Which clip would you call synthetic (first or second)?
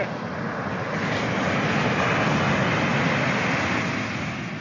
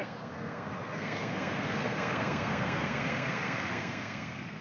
second